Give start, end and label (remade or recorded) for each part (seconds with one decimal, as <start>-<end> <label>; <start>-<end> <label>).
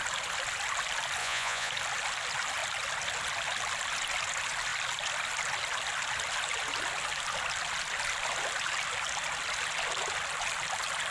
0.0-1.2 recorded; 1.2-1.7 remade; 1.7-11.1 recorded